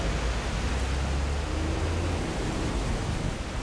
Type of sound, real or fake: real